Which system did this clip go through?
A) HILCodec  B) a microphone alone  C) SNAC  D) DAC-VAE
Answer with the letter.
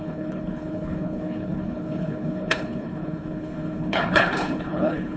A